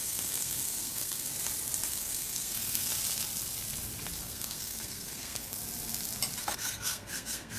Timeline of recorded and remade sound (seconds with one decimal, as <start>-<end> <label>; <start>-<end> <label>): 0.0-1.3 remade; 1.3-1.9 recorded; 1.9-2.9 remade; 2.9-4.2 recorded; 4.2-5.6 remade; 5.6-6.4 recorded; 6.4-7.6 remade